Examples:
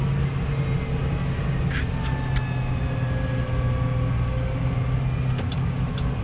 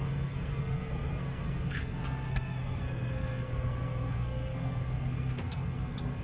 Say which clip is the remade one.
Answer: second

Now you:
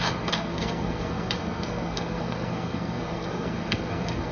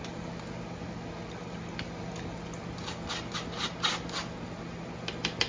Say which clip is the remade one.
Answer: first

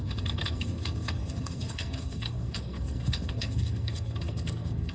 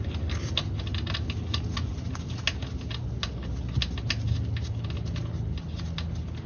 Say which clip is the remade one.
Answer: first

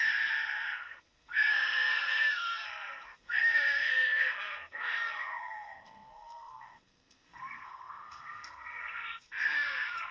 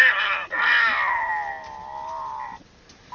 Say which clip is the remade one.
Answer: first